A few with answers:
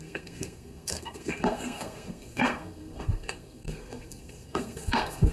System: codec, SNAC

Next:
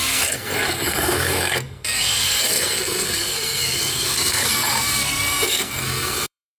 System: codec, SNAC